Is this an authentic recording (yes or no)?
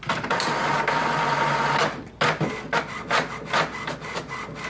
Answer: yes